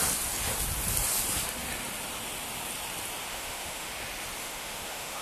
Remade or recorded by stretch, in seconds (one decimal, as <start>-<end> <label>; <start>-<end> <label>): 0.0-3.3 recorded; 3.3-3.9 remade; 3.9-4.4 recorded; 4.4-5.2 remade